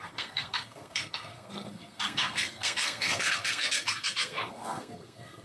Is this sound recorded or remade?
remade